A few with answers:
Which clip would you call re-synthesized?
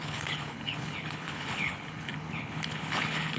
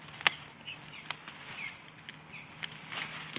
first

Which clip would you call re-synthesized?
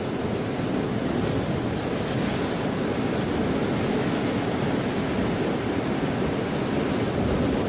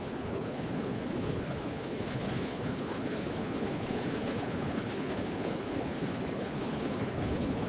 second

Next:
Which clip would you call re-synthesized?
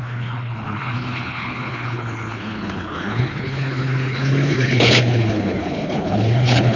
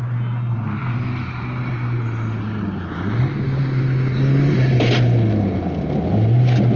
first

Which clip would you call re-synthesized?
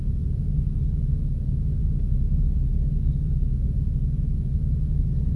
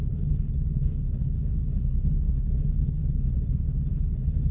second